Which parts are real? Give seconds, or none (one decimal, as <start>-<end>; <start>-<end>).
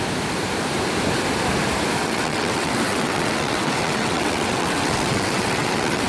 0.0-2.0